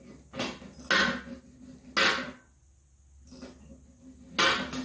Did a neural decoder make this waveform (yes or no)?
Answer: no